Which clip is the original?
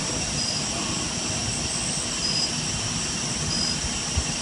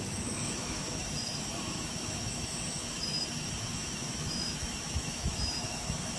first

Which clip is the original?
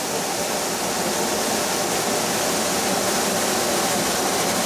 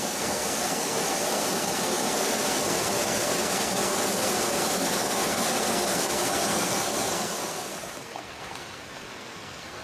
first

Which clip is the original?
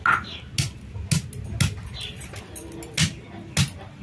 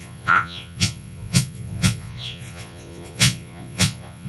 first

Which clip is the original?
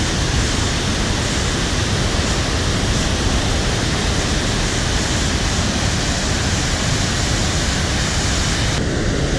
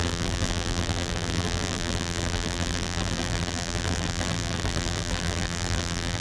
first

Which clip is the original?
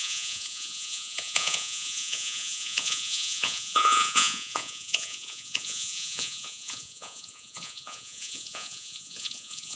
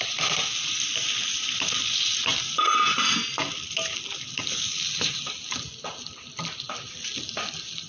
second